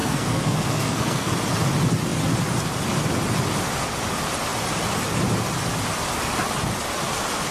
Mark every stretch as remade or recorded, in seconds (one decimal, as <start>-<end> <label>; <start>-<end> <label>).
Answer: 0.0-1.3 remade; 1.3-7.5 recorded